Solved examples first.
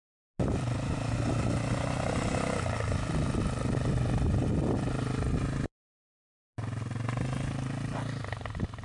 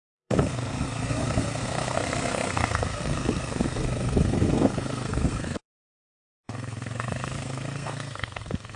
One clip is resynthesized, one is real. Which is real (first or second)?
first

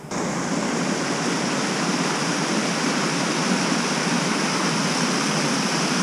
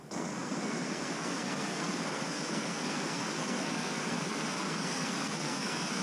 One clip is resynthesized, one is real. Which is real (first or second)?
first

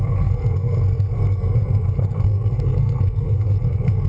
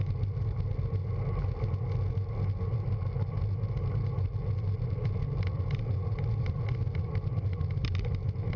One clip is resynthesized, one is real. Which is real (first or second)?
second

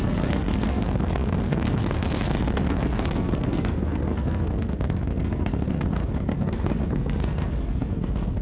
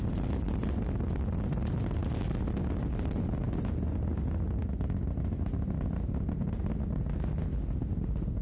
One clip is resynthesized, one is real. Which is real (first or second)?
second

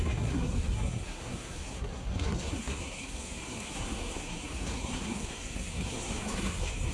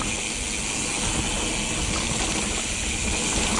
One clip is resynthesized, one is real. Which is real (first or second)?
second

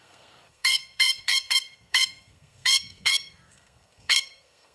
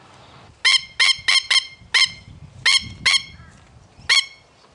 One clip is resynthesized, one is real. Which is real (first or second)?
second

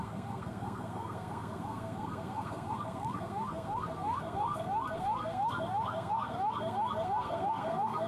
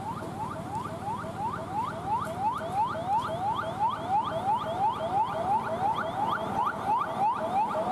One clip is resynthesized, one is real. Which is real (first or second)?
second